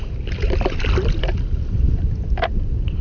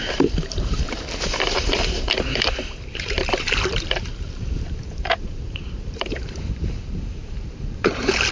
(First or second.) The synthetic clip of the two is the second